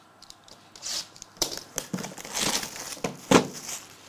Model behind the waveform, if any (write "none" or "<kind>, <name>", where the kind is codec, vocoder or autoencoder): none